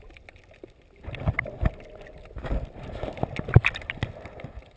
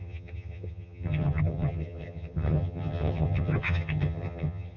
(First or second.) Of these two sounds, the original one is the first